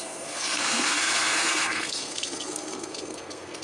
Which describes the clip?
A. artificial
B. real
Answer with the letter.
A